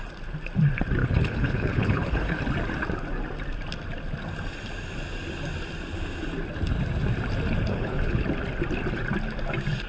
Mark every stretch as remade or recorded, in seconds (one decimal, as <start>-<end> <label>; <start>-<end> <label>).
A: 0.0-1.0 recorded; 1.0-2.4 remade; 2.4-7.7 recorded; 7.7-8.2 remade; 8.2-9.9 recorded